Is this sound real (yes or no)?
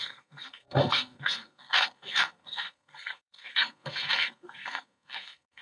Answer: no